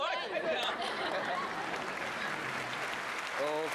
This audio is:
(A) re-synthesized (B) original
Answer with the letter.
B